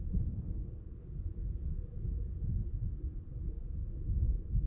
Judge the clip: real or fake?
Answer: real